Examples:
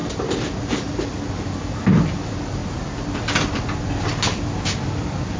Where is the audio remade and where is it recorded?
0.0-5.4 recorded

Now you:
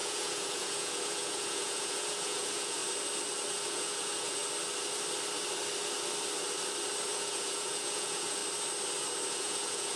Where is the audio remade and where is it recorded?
0.0-2.8 remade; 2.8-3.5 recorded; 3.5-4.4 remade; 4.4-7.1 recorded; 7.1-8.4 remade; 8.4-9.3 recorded; 9.3-10.0 remade